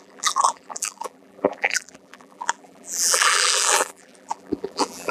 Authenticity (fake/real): fake